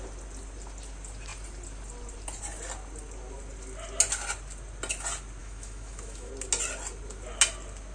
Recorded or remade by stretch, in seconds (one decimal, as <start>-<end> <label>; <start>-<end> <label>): 0.0-5.4 recorded; 5.4-6.3 remade; 6.3-7.9 recorded